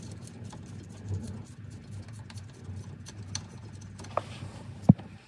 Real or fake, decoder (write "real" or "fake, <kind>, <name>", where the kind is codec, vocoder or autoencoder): real